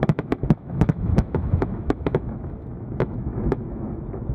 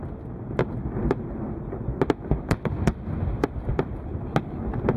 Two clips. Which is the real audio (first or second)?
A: second